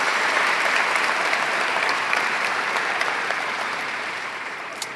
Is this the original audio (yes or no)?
no